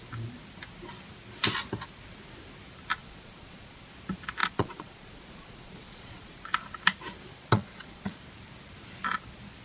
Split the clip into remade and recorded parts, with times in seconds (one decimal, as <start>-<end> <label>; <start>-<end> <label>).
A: 0.0-3.0 recorded; 3.0-3.9 remade; 3.9-4.4 recorded; 4.4-6.3 remade; 6.3-7.3 recorded; 7.3-8.2 remade; 8.2-9.6 recorded